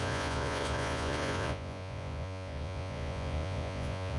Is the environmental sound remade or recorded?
remade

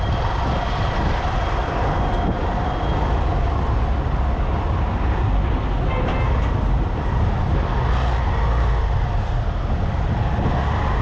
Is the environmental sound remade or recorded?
recorded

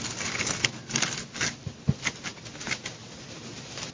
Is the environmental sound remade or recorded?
recorded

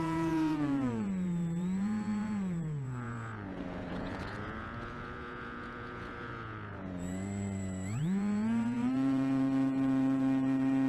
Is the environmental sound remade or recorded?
remade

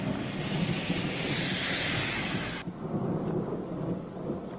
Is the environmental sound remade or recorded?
recorded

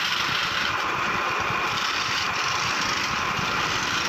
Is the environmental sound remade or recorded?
recorded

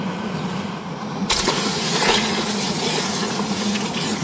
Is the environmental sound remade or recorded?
remade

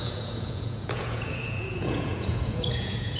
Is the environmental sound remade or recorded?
remade